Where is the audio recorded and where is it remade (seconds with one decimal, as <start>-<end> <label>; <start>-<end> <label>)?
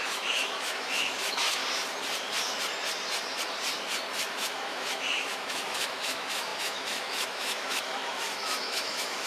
0.0-1.6 remade; 1.6-4.3 recorded; 4.3-9.3 remade